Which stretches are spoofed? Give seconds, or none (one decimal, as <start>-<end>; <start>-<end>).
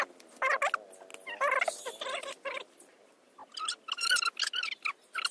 none